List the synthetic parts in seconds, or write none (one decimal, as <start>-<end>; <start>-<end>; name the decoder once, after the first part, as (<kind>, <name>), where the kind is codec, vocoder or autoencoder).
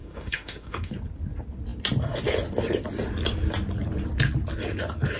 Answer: 0.0-0.9 (autoencoder, DAC-VAE)